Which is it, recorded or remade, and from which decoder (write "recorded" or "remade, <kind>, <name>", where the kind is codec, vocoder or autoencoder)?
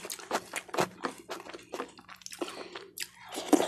recorded